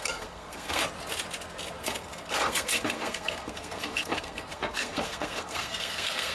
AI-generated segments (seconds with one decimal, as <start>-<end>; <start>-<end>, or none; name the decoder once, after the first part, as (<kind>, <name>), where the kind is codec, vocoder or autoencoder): 0.0-0.8 (codec, SNAC); 1.7-6.3